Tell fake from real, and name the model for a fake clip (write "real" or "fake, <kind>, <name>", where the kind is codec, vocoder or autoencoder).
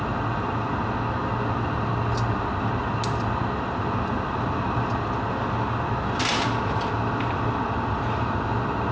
real